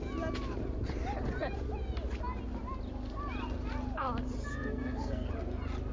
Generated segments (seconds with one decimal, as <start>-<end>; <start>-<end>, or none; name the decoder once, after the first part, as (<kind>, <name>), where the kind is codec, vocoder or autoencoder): 4.5-5.3 (codec, SNAC)